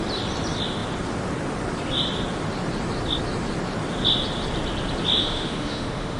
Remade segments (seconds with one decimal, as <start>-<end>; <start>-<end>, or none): 5.2-6.2